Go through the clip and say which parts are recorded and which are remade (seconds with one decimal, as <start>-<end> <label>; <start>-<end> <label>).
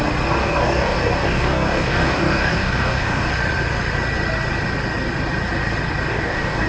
0.0-0.4 recorded; 0.4-3.3 remade; 3.3-6.1 recorded; 6.1-6.7 remade